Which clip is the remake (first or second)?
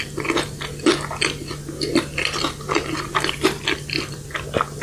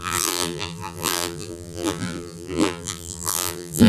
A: second